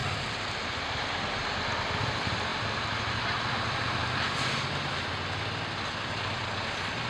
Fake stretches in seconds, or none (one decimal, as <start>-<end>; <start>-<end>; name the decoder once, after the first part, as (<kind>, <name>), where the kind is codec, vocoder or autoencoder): 0.6-2.5 (vocoder, BigVGAN v2); 3.3-7.1